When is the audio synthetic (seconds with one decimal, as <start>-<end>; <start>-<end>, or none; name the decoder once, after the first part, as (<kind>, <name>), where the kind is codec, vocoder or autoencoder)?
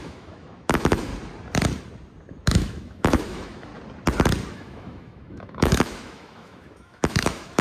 0.0-1.1 (autoencoder, DAC-VAE); 2.3-3.7; 4.5-7.6